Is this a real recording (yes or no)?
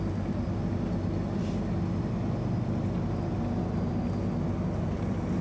yes